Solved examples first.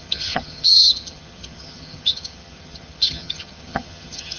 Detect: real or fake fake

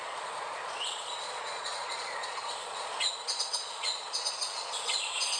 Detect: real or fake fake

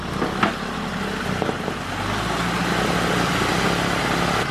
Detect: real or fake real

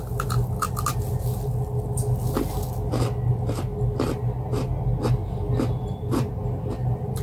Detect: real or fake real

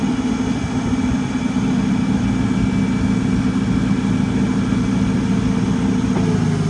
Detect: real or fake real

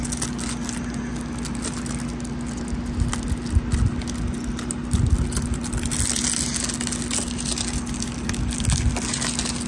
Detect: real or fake real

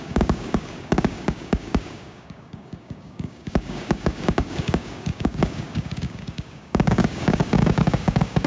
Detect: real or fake fake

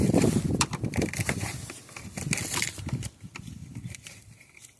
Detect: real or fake fake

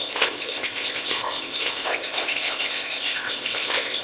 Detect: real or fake fake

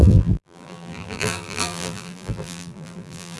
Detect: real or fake fake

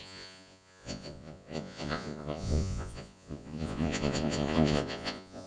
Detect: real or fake fake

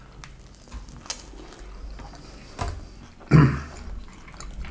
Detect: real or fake real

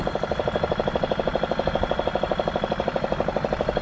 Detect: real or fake real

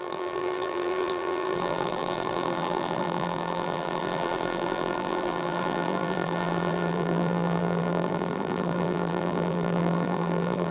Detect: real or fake fake